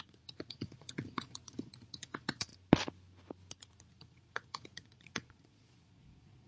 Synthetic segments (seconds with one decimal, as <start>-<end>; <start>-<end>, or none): 0.0-2.5; 3.6-6.5